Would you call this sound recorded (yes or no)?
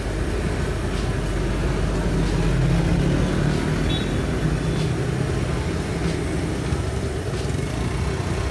yes